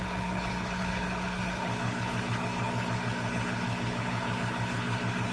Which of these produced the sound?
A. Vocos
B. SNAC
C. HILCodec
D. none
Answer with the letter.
C